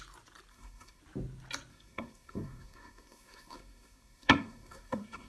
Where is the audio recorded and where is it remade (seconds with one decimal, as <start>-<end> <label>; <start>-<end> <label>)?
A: 0.0-0.5 recorded; 0.5-1.0 remade; 1.0-1.7 recorded; 1.7-5.3 remade